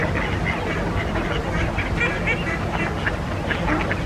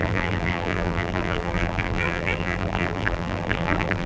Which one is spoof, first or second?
second